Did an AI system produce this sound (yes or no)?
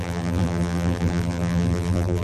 yes